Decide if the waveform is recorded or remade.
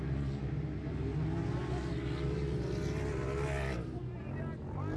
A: recorded